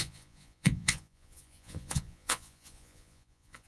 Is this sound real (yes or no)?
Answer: no